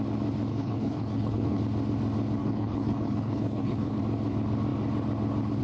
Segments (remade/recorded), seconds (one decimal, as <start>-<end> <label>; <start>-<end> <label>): 0.0-0.5 recorded; 0.5-1.6 remade; 1.6-2.4 recorded; 2.4-4.0 remade; 4.0-5.6 recorded